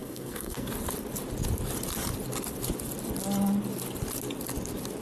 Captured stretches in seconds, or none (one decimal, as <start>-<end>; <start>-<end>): 0.7-5.0